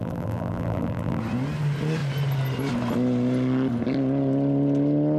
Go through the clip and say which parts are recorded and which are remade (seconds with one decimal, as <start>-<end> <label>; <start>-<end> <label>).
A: 0.0-1.2 remade; 1.2-5.2 recorded